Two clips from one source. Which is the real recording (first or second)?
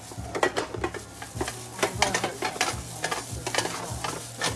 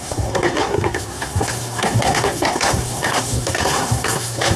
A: first